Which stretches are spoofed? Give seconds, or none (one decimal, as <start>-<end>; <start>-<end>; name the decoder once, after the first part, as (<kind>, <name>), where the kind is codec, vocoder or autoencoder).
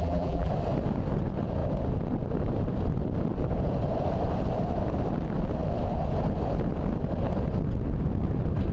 0.0-0.5 (vocoder, BigVGAN v2)